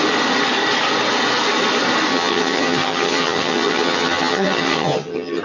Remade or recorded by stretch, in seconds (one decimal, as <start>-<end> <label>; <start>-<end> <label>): 0.0-2.1 recorded; 2.1-5.4 remade